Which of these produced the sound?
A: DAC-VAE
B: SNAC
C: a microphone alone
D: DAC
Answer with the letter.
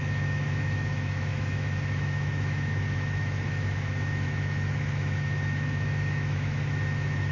A